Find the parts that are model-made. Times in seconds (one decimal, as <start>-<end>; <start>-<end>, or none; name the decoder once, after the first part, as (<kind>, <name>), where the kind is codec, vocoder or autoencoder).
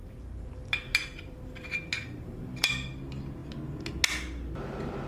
0.0-2.7 (vocoder, BigVGAN v2)